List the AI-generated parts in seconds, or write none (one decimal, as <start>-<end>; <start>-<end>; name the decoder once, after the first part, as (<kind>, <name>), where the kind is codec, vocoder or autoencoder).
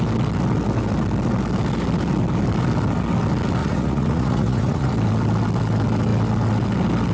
3.6-4.9 (vocoder, Vocos)